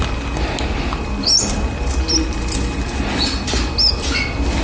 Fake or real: real